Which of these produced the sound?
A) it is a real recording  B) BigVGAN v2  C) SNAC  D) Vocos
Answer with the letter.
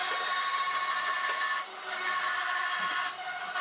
A